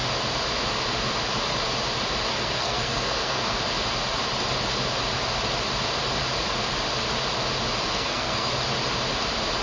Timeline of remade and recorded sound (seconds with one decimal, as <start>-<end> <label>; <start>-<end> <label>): 0.0-2.3 recorded; 2.3-3.6 remade; 3.6-7.9 recorded; 7.9-8.5 remade; 8.5-9.6 recorded